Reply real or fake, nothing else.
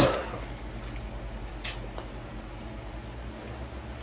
real